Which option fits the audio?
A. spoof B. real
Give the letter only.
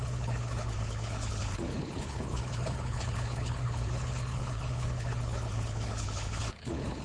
A